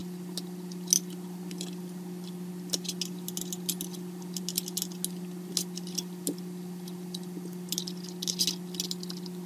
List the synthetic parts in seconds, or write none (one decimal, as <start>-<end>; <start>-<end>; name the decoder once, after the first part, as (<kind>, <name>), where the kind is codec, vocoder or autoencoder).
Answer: none